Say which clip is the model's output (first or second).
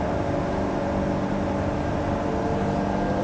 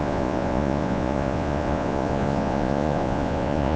second